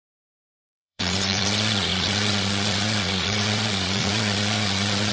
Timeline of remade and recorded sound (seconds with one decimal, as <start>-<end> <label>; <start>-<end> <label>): 0.0-5.1 remade